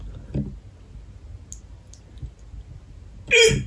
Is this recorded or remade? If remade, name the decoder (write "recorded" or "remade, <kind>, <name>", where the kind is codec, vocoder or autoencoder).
recorded